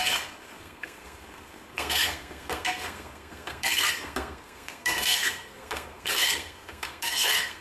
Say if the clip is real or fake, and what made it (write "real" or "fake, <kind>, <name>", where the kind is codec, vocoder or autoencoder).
fake, codec, SNAC